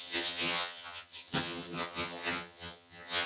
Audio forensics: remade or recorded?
remade